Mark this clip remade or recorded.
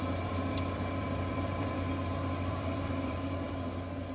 remade